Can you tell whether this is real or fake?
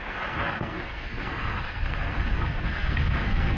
fake